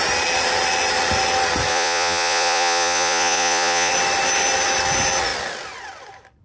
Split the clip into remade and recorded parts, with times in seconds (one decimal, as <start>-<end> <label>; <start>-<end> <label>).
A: 0.0-1.7 recorded; 1.7-3.9 remade; 3.9-6.4 recorded